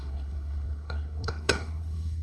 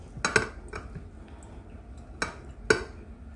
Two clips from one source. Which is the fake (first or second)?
first